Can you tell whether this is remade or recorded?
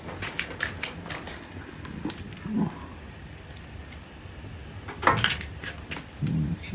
recorded